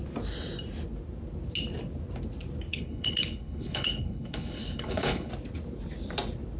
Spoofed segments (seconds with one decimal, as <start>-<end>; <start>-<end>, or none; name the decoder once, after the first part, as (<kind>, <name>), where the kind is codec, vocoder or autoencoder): 2.7-5.3 (codec, HILCodec)